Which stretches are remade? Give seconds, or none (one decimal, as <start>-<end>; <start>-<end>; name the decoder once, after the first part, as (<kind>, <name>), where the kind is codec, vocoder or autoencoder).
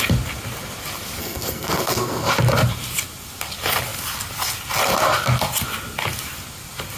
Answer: 1.2-2.3 (codec, SNAC)